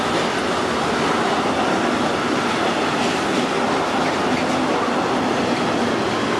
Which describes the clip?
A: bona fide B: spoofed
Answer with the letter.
A